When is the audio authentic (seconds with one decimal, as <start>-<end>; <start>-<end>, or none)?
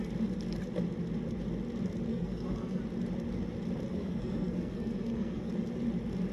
0.0-2.1; 2.8-3.9; 5.5-6.3